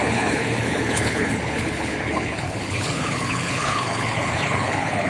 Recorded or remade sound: remade